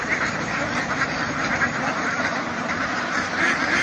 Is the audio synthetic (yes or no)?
yes